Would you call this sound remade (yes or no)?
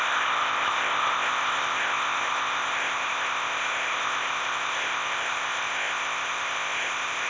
yes